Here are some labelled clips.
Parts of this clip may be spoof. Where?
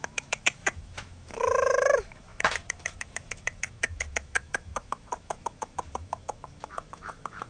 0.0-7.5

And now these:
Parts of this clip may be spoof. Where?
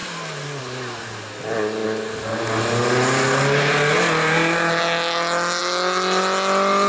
none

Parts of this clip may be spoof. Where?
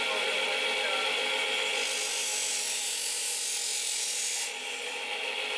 none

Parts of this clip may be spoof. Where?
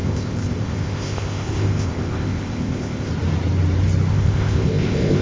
0.0-3.1; 4.1-5.2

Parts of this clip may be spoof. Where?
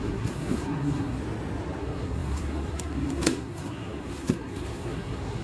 0.0-1.2; 1.8-5.4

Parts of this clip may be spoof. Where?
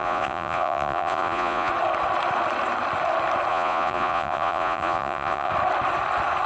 0.0-1.7; 3.5-5.5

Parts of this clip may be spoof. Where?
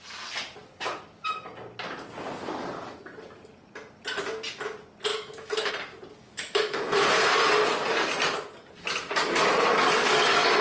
5.1-5.7; 6.2-7.0